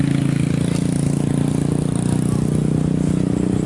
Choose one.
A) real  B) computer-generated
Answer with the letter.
A